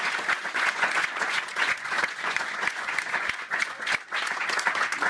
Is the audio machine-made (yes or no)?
yes